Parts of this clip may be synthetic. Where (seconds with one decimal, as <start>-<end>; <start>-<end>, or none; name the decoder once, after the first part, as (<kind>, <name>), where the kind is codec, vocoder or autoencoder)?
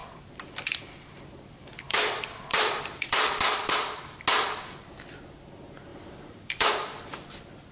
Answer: 0.0-3.7 (vocoder, BigVGAN v2); 5.9-6.7